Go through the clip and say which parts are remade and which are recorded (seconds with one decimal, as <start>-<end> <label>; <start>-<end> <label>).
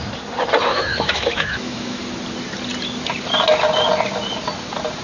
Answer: 0.0-0.7 recorded; 0.7-2.0 remade; 2.0-5.0 recorded